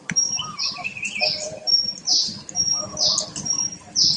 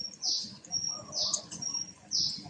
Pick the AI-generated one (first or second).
second